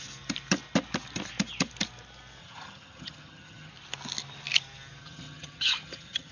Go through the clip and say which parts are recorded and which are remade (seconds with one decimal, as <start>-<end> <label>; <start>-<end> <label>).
0.0-2.4 recorded; 2.4-3.7 remade; 3.7-5.0 recorded; 5.0-6.3 remade